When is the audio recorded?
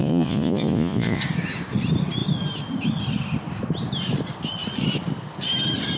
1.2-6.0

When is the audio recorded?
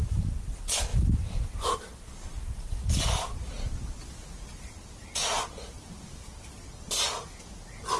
0.0-0.9; 1.5-8.0